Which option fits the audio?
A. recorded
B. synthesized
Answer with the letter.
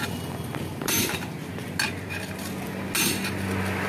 A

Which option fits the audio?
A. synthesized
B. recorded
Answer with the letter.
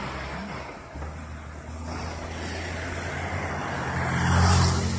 B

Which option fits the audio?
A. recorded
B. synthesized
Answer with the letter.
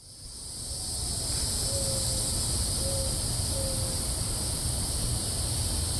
A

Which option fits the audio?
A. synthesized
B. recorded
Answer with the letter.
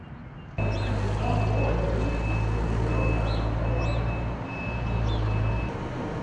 B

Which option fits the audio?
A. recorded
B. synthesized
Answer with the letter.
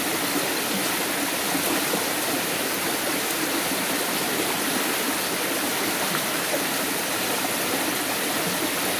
A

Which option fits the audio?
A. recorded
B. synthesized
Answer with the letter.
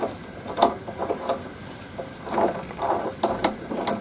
B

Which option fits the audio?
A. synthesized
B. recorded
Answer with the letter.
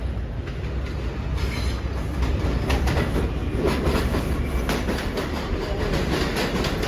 B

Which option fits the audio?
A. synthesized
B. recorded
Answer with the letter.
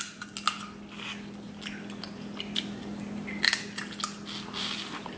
B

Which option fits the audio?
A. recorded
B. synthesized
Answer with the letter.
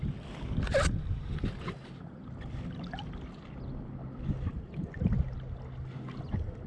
A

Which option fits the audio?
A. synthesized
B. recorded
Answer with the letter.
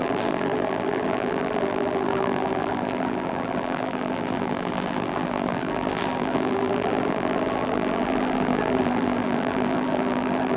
A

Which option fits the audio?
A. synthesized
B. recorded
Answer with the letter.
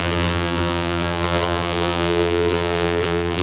A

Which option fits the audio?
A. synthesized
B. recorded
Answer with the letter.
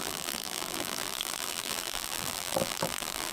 A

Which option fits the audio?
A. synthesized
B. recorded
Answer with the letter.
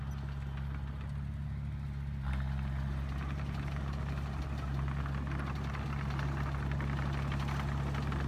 B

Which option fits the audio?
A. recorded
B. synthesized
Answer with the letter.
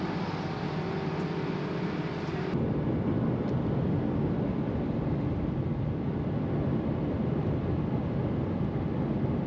B